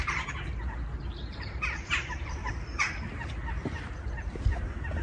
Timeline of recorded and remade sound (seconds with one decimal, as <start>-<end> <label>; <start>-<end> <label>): 0.0-1.2 recorded; 1.2-2.5 remade; 2.5-5.0 recorded